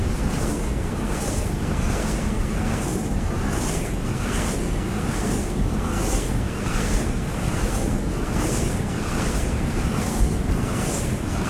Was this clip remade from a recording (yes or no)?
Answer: yes